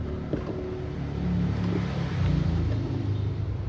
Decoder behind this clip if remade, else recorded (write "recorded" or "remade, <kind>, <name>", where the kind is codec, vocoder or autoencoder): recorded